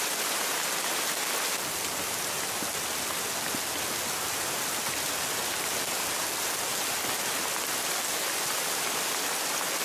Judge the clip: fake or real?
real